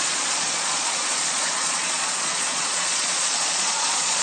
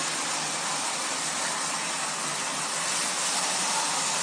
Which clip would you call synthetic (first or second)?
first